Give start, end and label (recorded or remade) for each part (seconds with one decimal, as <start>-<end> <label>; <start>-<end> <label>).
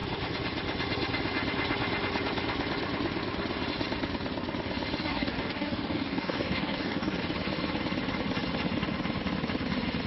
0.0-5.0 recorded; 5.0-7.2 remade; 7.2-10.1 recorded